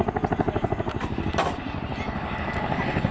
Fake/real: real